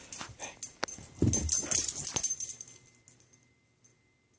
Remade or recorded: recorded